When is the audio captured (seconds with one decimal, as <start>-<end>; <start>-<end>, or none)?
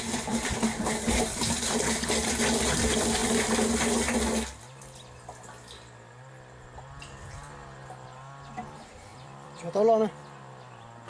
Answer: 0.0-1.3; 1.9-9.1; 10.2-11.1